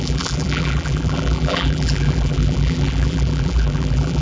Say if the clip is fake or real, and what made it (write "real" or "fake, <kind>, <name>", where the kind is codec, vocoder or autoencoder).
fake, vocoder, BigVGAN v2